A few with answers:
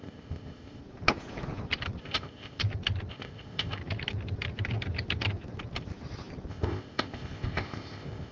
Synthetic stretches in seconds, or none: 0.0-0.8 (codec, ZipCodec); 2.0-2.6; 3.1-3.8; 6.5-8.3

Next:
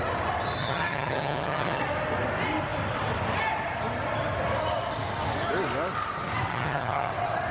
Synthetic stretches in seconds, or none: 0.6-1.8 (vocoder, HiFi-GAN); 6.5-7.1

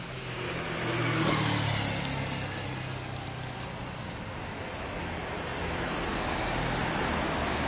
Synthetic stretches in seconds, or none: none